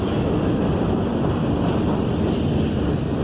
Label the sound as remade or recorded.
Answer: recorded